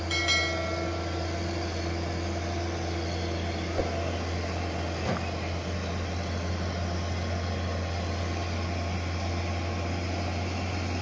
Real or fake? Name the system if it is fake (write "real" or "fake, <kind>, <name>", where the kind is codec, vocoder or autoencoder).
real